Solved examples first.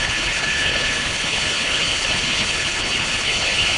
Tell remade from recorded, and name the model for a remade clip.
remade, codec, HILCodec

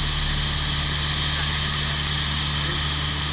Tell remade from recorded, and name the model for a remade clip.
recorded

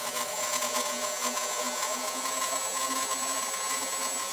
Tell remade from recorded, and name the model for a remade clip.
remade, vocoder, Vocos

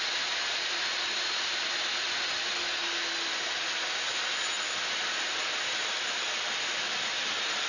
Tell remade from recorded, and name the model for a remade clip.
recorded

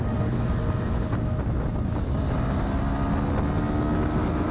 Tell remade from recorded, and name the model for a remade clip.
recorded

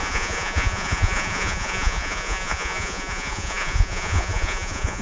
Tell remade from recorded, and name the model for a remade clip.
remade, vocoder, Vocos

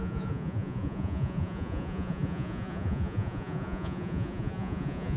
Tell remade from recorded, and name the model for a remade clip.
remade, vocoder, Vocos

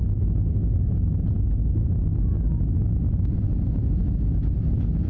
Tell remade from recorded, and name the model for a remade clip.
recorded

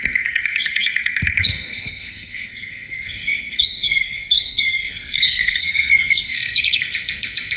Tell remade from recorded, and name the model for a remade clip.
remade, codec, SNAC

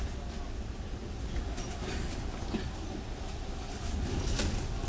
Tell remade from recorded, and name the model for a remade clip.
recorded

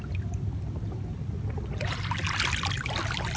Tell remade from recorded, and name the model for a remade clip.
recorded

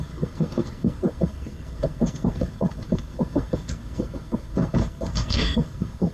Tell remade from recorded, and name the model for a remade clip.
remade, codec, SNAC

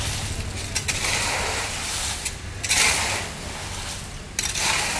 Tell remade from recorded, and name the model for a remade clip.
recorded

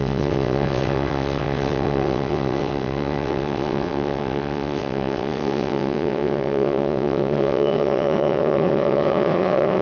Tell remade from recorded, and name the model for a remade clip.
remade, vocoder, WaveNeXt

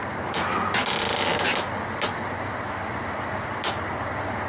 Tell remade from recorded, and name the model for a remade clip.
recorded